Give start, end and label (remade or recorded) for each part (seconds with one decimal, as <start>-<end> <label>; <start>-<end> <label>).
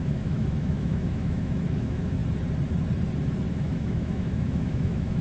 0.0-2.2 remade; 2.2-3.5 recorded; 3.5-5.2 remade